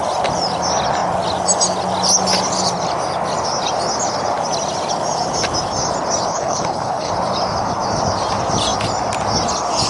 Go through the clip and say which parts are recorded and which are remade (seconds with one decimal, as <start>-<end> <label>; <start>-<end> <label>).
0.0-6.3 recorded; 6.3-7.1 remade; 7.1-9.9 recorded